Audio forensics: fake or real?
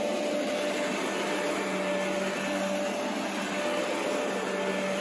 real